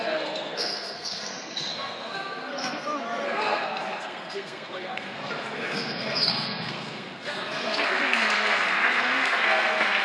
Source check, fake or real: fake